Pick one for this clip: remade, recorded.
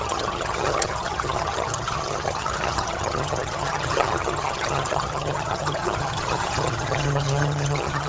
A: remade